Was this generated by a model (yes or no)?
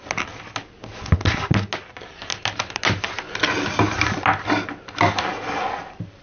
no